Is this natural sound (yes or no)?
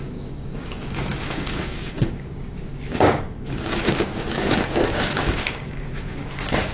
no